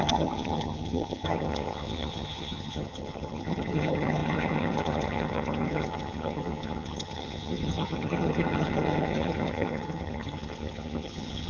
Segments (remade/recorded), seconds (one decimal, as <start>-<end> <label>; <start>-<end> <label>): 0.0-11.5 remade